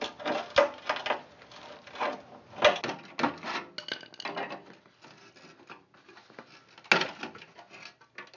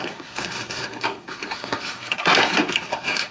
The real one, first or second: first